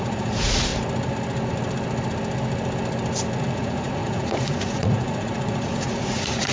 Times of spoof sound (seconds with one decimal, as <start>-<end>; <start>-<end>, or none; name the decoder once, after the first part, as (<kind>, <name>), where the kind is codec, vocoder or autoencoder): 0.0-0.7 (vocoder, Vocos); 3.4-6.5